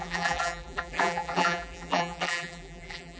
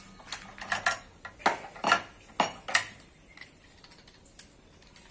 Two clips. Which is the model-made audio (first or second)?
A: first